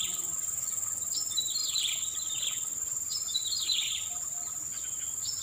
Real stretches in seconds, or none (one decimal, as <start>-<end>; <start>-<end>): 0.0-5.4